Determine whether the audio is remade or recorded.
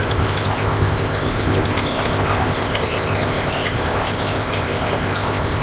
remade